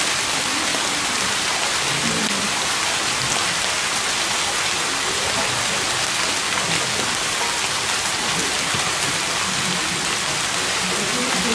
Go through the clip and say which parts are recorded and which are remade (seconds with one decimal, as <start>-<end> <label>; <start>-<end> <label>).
0.0-0.7 recorded; 0.7-3.8 remade; 3.8-11.5 recorded